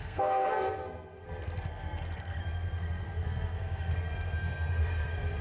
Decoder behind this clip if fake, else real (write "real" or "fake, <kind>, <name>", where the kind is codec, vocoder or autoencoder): fake, codec, SNAC